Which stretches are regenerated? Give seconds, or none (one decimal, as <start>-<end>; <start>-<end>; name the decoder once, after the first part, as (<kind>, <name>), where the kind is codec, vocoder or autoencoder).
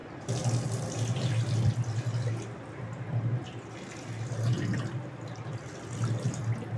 0.0-1.7 (vocoder, BigVGAN v2); 4.5-5.4